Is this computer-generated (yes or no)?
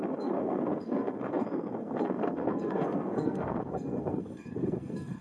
yes